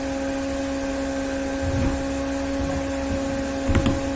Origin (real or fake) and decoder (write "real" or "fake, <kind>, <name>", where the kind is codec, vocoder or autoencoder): real